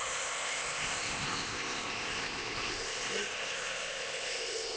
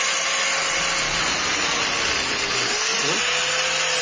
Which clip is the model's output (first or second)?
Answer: first